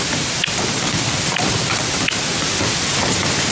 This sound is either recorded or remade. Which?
recorded